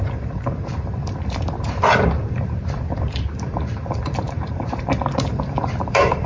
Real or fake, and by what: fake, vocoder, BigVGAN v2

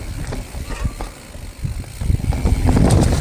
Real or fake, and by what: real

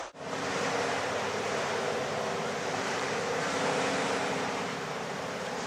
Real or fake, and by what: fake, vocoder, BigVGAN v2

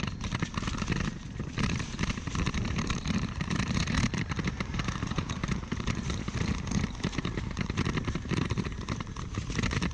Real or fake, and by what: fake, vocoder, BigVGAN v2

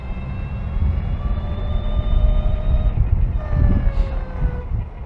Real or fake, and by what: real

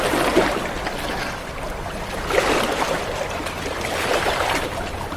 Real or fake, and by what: fake, vocoder, BigVGAN v2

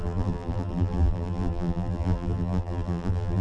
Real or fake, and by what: fake, vocoder, BigVGAN v2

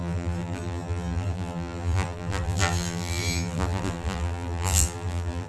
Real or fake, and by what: fake, vocoder, BigVGAN v2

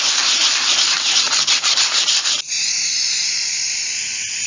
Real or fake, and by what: fake, vocoder, BigVGAN v2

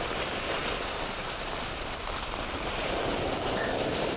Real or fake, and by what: fake, vocoder, BigVGAN v2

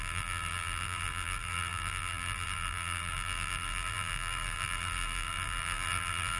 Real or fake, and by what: fake, vocoder, BigVGAN v2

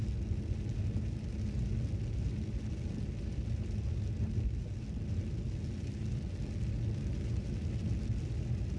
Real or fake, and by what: real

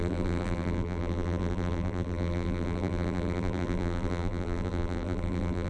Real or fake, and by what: fake, vocoder, BigVGAN v2